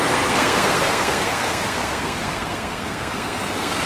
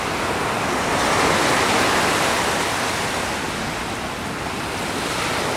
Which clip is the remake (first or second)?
first